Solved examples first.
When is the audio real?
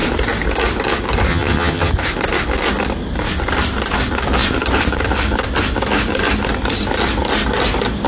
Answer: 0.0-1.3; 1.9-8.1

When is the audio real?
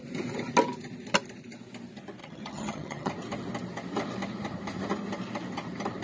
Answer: 0.0-2.2; 3.1-6.0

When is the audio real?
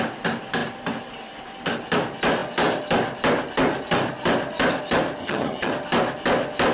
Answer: 0.0-5.2; 5.7-6.7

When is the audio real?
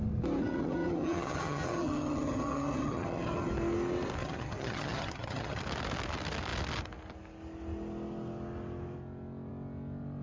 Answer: 0.0-0.4; 3.5-4.2; 5.6-10.2